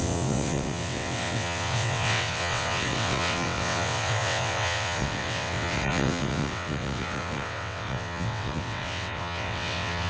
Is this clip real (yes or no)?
no